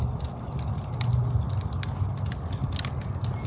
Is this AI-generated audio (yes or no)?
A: no